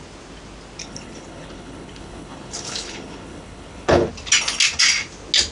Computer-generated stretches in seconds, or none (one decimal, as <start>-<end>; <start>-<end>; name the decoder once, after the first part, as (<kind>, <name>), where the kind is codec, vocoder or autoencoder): 0.8-4.1 (codec, HILCodec)